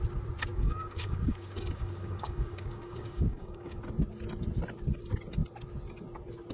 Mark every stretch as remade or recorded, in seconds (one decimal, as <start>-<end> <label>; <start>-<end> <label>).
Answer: 0.0-0.5 recorded; 0.5-3.8 remade; 3.8-6.5 recorded